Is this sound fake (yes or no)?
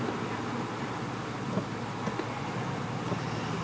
no